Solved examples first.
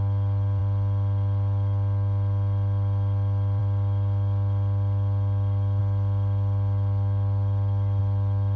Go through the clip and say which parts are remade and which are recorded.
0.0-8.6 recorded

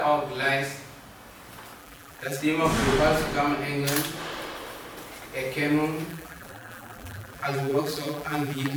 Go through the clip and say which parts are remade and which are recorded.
0.0-1.8 recorded; 1.8-2.4 remade; 2.4-6.1 recorded; 6.1-8.8 remade